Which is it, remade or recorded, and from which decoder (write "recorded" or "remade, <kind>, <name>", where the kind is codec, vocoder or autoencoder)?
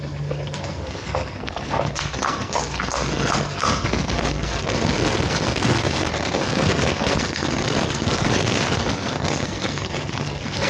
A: remade, codec, SNAC